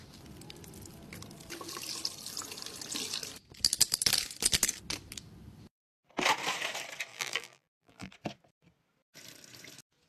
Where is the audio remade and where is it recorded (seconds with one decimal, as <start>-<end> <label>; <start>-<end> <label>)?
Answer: 0.0-7.1 recorded; 7.1-8.1 remade; 8.1-10.1 recorded